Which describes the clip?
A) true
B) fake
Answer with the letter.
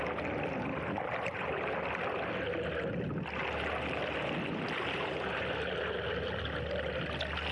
A